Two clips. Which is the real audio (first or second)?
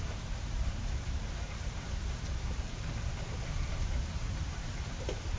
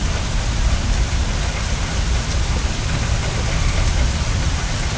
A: second